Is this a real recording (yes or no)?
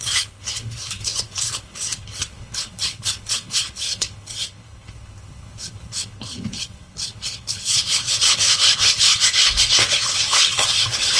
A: no